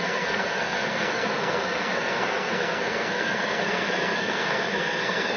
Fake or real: fake